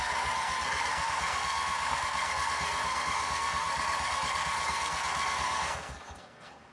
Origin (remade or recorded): remade